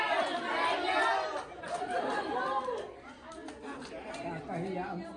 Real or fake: real